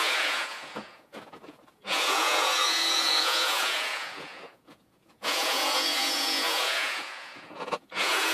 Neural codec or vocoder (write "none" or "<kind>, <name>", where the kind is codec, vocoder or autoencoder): vocoder, Vocos